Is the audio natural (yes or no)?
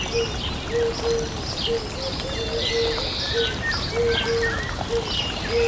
yes